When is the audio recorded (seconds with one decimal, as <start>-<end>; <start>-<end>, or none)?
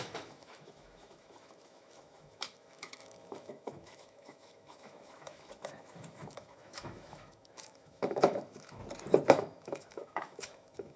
8.8-9.3